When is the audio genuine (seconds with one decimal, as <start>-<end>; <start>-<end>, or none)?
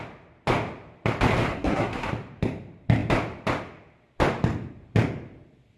0.0-1.5; 2.1-5.8